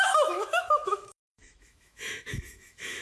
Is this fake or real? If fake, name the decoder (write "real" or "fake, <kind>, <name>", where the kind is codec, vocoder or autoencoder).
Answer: fake, autoencoder, DAC-VAE